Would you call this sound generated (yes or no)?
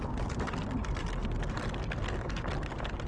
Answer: no